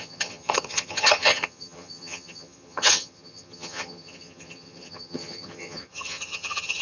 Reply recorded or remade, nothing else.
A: remade